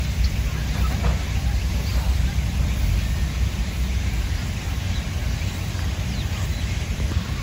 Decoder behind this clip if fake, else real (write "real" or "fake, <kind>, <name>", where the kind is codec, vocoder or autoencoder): real